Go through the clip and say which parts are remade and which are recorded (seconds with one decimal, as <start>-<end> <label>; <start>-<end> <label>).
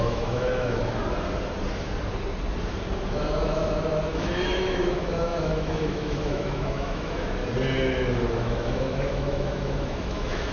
0.0-0.8 remade; 0.8-4.1 recorded; 4.1-7.4 remade; 7.4-8.3 recorded; 8.3-10.5 remade